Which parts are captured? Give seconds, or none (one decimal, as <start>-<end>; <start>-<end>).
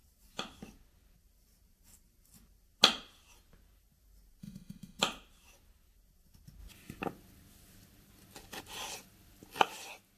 0.0-4.4; 5.0-10.2